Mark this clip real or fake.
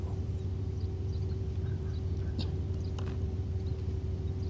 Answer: real